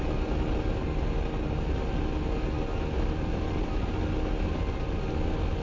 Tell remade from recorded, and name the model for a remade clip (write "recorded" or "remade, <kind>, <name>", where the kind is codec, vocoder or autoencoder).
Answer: recorded